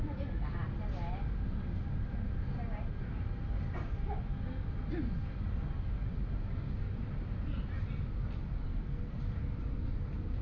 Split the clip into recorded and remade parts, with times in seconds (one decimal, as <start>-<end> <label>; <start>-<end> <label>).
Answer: 0.0-8.7 recorded; 8.7-9.2 remade; 9.2-10.4 recorded